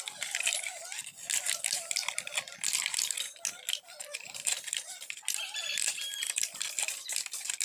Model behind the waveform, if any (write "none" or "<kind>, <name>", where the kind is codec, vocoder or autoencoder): none